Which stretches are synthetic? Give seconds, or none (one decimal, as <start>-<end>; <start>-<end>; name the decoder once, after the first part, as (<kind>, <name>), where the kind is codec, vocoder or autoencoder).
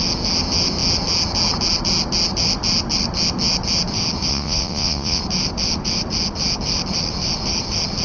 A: 4.3-5.2 (vocoder, Vocos)